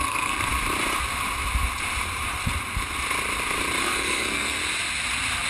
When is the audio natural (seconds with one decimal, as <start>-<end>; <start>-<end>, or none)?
0.5-3.8; 4.6-5.5